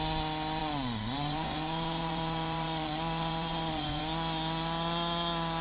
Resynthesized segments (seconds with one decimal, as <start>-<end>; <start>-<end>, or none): 0.6-4.0